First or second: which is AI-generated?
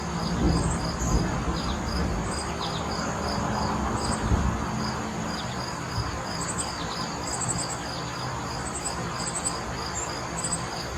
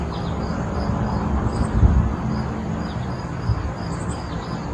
second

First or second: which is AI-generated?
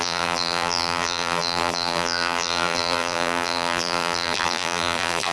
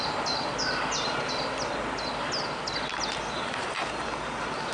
first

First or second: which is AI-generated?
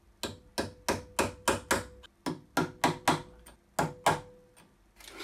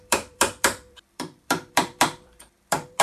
second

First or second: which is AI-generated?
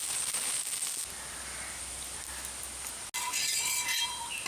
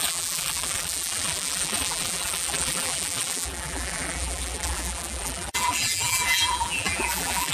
second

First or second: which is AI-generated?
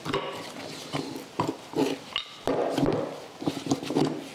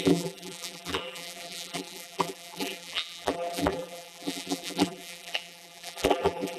second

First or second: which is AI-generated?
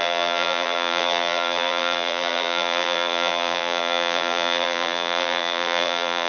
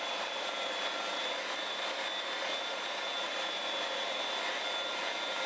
first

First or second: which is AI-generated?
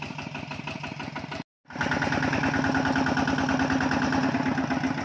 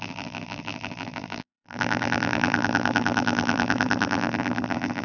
second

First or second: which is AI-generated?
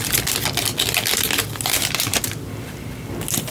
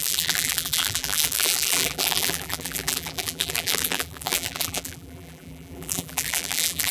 second